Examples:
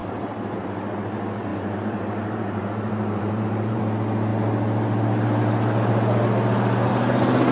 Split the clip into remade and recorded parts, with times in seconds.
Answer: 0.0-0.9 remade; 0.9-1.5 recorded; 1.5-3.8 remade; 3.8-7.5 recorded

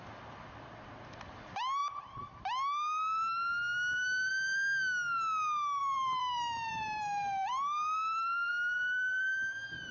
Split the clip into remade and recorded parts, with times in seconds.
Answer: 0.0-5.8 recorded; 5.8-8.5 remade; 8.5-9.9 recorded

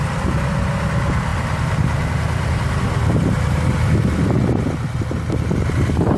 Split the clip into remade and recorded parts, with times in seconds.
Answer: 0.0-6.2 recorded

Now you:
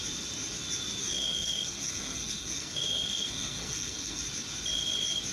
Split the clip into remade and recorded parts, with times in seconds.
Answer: 0.0-1.0 recorded; 1.0-4.2 remade; 4.2-5.3 recorded

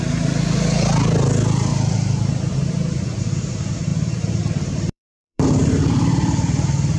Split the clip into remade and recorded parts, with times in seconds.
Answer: 0.0-3.9 recorded; 3.9-5.8 remade; 5.8-7.0 recorded

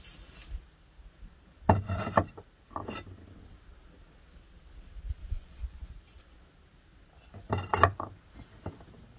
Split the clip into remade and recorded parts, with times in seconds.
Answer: 0.0-5.2 recorded; 5.2-5.9 remade; 5.9-9.2 recorded